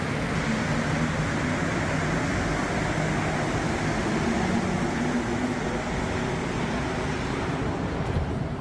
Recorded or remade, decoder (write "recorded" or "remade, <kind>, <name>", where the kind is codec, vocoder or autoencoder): recorded